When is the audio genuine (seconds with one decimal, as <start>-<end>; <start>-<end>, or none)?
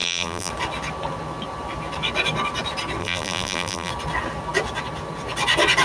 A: 0.5-3.0; 3.9-5.8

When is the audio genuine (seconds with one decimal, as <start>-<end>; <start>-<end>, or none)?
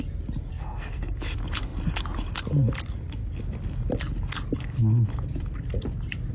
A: 0.0-0.5; 1.1-6.3